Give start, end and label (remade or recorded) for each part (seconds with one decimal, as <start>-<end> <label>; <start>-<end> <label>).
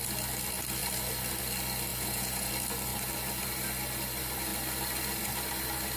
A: 0.0-1.9 recorded; 1.9-2.5 remade; 2.5-6.0 recorded